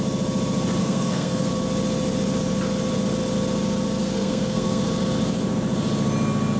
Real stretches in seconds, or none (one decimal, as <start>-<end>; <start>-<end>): 0.0-0.8; 1.5-4.0; 4.8-6.6